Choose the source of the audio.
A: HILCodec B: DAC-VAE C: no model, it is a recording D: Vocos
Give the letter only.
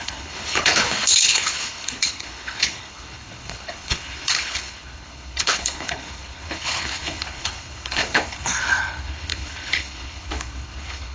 A